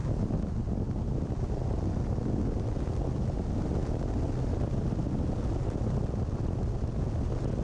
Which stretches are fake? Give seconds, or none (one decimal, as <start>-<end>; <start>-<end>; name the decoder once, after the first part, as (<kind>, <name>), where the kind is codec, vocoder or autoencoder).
none